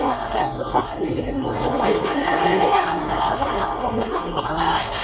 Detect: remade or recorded remade